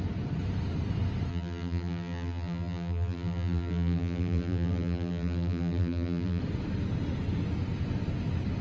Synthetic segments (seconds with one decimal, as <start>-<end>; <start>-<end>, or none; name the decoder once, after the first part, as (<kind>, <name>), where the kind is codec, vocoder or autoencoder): 1.3-6.4 (vocoder, BigVGAN v2)